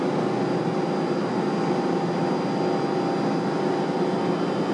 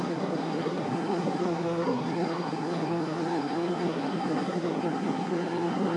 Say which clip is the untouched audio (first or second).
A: first